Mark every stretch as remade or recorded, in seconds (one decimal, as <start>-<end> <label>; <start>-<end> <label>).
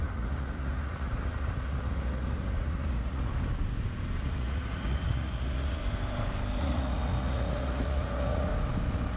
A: 0.0-3.3 remade; 3.3-4.2 recorded; 4.2-5.8 remade; 5.8-6.6 recorded; 6.6-8.5 remade; 8.5-9.2 recorded